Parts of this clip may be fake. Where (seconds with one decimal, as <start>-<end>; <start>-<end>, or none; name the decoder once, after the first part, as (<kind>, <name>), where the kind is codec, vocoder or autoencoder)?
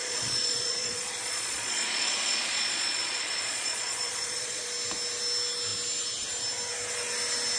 0.0-4.6 (vocoder, Vocos)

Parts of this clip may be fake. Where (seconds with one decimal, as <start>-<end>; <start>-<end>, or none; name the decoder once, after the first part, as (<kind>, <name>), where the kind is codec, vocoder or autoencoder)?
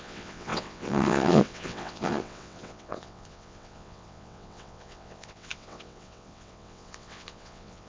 0.0-7.9 (vocoder, WaveNeXt)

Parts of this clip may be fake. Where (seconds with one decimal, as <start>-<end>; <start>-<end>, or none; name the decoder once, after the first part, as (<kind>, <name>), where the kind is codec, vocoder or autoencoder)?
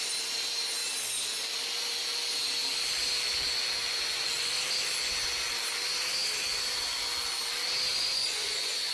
3.8-4.5 (vocoder, Vocos); 7.9-8.9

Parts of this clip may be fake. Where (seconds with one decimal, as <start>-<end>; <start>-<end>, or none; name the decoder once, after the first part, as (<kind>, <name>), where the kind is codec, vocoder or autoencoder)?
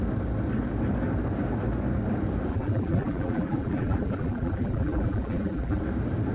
2.5-5.8 (vocoder, BigVGAN v2)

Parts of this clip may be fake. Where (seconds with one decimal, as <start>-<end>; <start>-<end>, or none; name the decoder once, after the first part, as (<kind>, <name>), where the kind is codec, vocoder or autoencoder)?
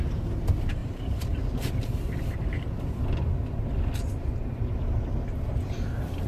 0.8-3.0 (vocoder, BigVGAN v2)